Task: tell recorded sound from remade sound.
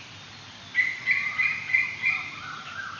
recorded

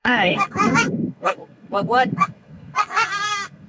remade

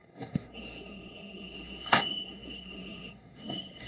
remade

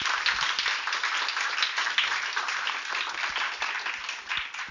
recorded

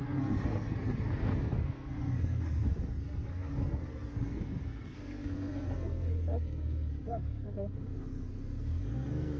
remade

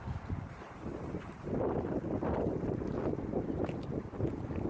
recorded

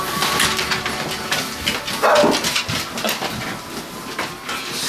recorded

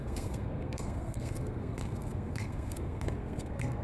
remade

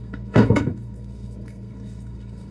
remade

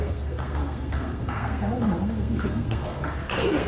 remade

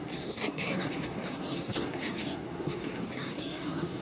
remade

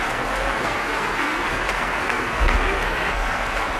remade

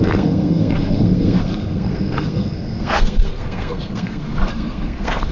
remade